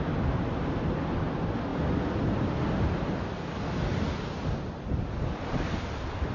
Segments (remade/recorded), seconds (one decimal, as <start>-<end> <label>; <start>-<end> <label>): 0.0-6.3 recorded